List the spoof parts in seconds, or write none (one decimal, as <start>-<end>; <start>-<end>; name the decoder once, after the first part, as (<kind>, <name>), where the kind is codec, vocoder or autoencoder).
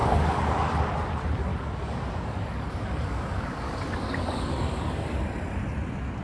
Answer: 0.0-0.9 (codec, DAC); 1.5-5.2